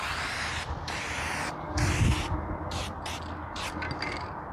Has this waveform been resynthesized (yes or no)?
no